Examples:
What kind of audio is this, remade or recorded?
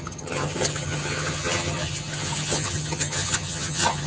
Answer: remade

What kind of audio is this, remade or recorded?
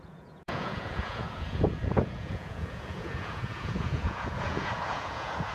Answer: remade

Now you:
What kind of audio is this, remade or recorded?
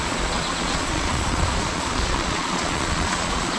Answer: remade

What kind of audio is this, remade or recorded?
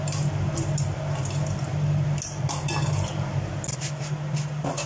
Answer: recorded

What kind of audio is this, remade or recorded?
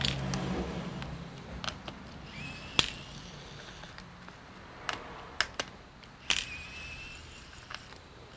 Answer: recorded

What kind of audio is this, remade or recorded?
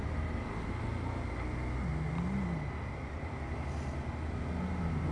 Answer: recorded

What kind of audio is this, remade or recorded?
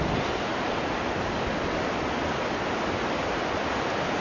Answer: recorded